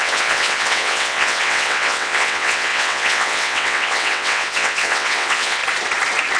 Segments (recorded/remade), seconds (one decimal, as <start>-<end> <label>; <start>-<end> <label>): 0.0-5.6 remade; 5.6-6.4 recorded